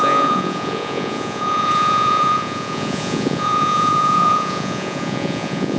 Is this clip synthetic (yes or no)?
yes